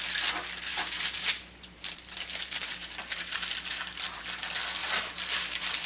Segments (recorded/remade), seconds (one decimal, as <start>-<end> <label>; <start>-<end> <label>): 0.0-0.7 recorded; 0.7-4.2 remade; 4.2-4.8 recorded; 4.8-5.9 remade

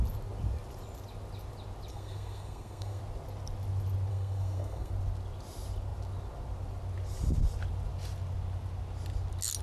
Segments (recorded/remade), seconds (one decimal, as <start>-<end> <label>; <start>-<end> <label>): 0.0-1.9 recorded; 1.9-3.0 remade; 3.0-4.1 recorded; 4.1-4.9 remade; 4.9-9.6 recorded